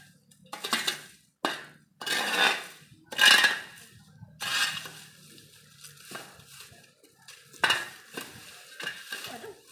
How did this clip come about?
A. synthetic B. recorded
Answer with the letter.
B